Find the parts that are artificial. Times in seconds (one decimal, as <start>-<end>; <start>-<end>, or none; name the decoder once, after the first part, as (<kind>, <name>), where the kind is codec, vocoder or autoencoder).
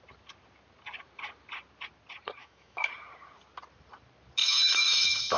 2.4-2.9 (autoencoder, DAC-VAE); 4.4-5.4